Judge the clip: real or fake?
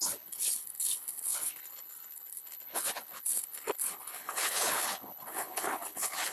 fake